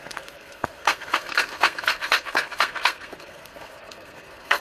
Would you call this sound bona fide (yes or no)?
no